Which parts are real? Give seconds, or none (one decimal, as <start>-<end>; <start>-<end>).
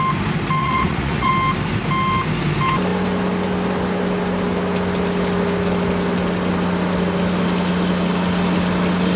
0.0-0.6; 1.3-9.2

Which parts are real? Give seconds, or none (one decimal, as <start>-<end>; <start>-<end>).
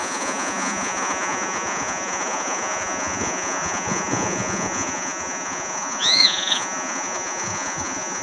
none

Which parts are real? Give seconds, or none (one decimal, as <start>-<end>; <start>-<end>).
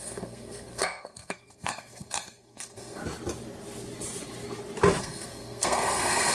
3.0-5.0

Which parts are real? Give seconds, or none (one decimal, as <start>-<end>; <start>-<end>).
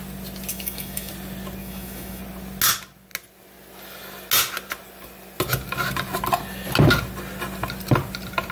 0.0-0.5; 1.1-1.6; 2.2-8.5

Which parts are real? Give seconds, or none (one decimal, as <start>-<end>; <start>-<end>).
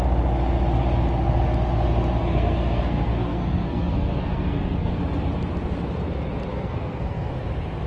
0.0-2.2; 5.0-6.5; 7.3-7.9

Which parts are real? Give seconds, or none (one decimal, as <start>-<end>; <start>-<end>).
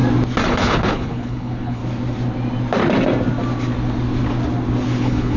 0.0-0.5; 1.8-5.0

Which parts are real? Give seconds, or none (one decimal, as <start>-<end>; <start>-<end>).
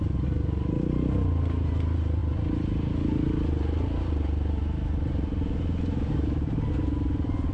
0.0-7.5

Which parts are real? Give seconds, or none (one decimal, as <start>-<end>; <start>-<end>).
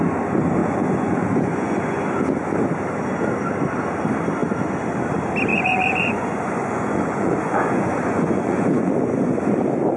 0.0-0.6; 2.0-5.5; 8.9-10.0